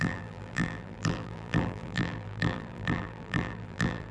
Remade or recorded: remade